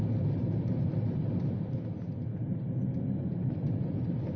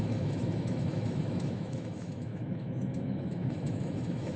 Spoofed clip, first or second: second